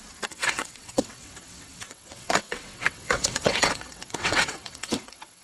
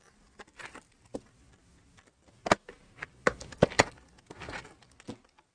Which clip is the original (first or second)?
second